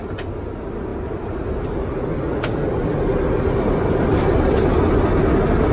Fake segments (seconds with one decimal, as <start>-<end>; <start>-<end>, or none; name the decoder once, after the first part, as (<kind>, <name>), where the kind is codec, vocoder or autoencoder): none